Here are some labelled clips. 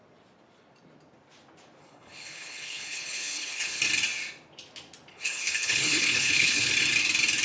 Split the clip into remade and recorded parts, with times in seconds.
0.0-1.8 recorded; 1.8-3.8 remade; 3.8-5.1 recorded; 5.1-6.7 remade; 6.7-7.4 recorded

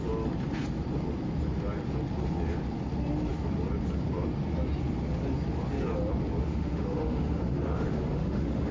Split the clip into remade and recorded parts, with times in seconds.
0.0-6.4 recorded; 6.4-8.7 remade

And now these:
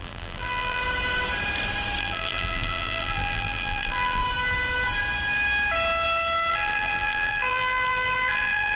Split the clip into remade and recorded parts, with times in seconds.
0.0-0.8 remade; 0.8-2.0 recorded; 2.0-4.2 remade; 4.2-6.5 recorded; 6.5-8.7 remade